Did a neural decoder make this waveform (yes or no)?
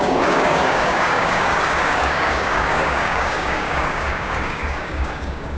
yes